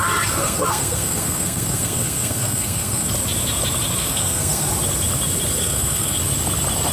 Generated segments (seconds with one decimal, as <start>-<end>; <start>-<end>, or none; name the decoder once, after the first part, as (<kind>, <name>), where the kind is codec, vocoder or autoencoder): 0.4-3.1 (codec, SNAC); 4.0-4.7; 5.6-6.2